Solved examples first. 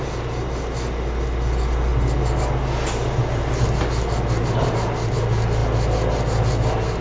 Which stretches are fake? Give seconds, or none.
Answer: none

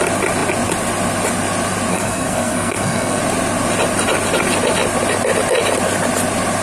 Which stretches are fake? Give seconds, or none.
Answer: 1.9-3.2 (codec, SNAC)